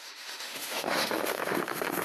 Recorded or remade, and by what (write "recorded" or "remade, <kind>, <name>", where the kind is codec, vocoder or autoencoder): remade, autoencoder, DAC-VAE